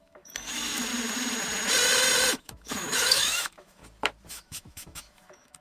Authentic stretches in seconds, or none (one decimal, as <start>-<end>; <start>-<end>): 0.9-2.3; 3.8-4.3